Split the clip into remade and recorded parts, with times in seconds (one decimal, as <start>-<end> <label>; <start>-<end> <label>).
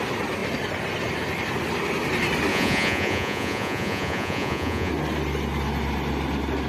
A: 0.0-2.5 recorded; 2.5-4.9 remade; 4.9-6.7 recorded